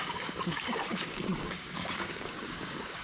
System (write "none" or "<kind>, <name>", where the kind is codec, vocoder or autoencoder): codec, DAC